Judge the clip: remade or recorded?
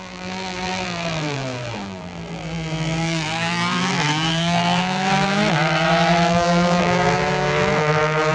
remade